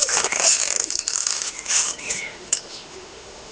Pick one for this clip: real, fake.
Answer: fake